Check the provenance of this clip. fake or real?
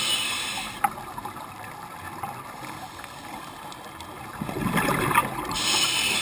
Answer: real